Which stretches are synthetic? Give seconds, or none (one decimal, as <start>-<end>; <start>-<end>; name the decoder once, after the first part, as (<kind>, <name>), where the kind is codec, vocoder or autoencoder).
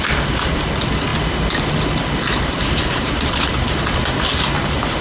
none